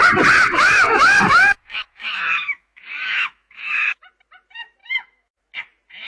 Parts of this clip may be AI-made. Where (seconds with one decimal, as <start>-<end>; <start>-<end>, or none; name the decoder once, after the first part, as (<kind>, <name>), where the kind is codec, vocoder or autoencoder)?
0.4-4.1 (autoencoder, DAC-VAE); 4.8-5.4